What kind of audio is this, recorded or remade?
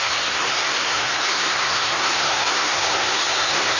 remade